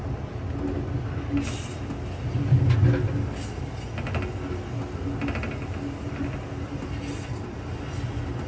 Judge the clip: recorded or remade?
recorded